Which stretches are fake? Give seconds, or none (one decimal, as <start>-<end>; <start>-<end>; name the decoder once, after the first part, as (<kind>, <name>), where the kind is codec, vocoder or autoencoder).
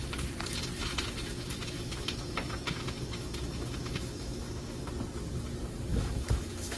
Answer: 0.8-4.9 (autoencoder, DAC-VAE); 5.9-6.8